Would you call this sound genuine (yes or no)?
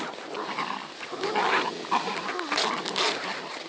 yes